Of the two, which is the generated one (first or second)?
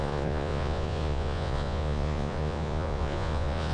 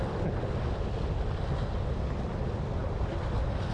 first